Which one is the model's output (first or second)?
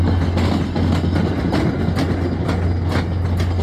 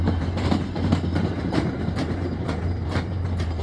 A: second